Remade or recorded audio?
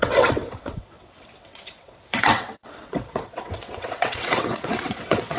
remade